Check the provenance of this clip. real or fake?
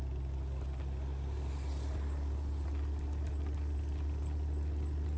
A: real